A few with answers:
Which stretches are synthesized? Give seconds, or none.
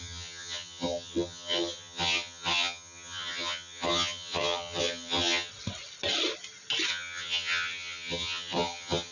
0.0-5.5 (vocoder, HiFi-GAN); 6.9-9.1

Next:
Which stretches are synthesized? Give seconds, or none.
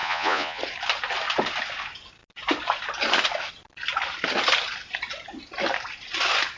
0.0-0.6 (vocoder, Vocos)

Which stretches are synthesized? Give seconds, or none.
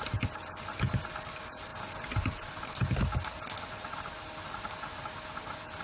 none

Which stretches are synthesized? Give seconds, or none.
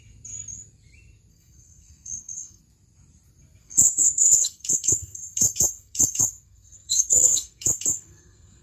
1.3-2.6 (codec, SNAC); 3.6-8.6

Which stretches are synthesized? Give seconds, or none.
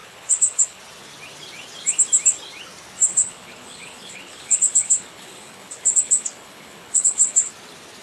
0.0-0.8 (codec, HILCodec); 3.1-7.5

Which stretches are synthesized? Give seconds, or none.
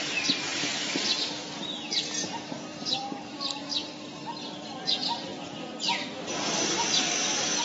0.5-1.5 (vocoder, BigVGAN v2); 2.7-3.5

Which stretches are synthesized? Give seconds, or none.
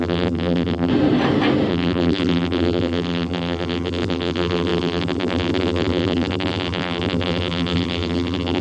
0.0-0.9 (vocoder, BigVGAN v2); 1.7-8.6